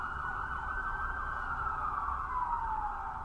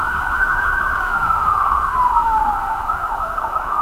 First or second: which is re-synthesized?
second